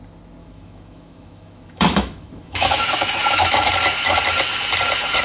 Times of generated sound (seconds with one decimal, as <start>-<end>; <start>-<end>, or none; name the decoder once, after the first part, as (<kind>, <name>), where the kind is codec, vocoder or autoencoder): 0.4-3.5 (autoencoder, DAC-VAE)

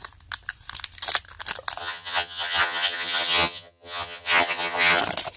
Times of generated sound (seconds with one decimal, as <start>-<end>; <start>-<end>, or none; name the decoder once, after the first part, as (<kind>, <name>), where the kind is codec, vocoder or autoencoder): 1.8-5.0 (vocoder, HiFi-GAN)

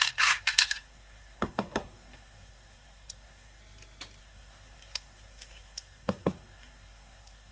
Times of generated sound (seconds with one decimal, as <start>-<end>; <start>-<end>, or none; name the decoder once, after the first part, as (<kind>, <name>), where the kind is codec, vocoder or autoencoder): 0.0-3.6 (codec, SNAC); 4.2-7.5

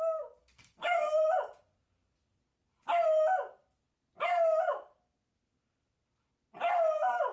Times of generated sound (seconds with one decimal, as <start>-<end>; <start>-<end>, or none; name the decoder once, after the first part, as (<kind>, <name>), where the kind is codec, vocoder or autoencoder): 0.4-1.1 (codec, SNAC)